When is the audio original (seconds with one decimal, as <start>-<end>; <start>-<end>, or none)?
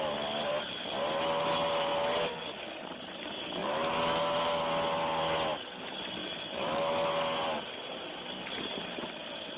0.0-3.6; 4.2-6.2; 7.1-9.6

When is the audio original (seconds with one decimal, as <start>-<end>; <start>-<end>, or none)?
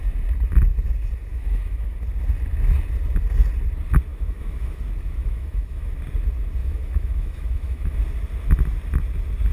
0.0-1.3; 2.0-4.1; 4.8-5.2; 5.9-6.6; 8.0-9.5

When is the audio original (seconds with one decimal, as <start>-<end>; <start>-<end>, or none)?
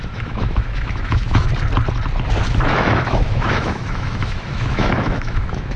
1.5-2.5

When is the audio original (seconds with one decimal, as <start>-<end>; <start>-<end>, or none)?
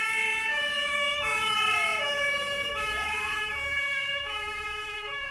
none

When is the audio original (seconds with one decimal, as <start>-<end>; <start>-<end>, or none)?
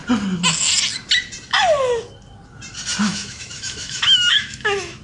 0.0-3.0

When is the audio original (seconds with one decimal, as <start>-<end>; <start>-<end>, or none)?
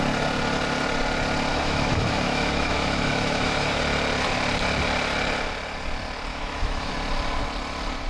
0.0-1.5; 3.8-6.3; 6.9-8.1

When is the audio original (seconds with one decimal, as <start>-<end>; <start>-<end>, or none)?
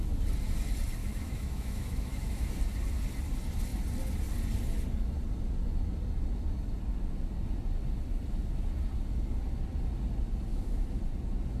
0.0-1.0; 2.5-10.5; 11.0-11.6